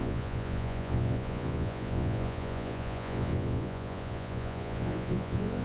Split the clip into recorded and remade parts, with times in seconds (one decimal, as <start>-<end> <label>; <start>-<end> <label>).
0.0-5.6 remade